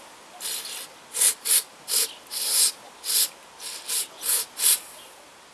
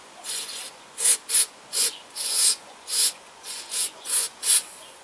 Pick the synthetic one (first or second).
second